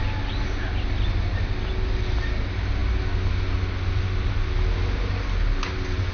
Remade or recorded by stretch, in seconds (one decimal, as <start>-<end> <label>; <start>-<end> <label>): 0.0-6.1 recorded